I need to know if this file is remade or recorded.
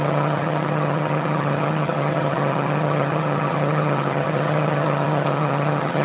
remade